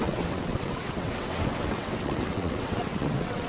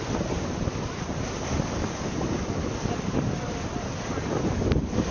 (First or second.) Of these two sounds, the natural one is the second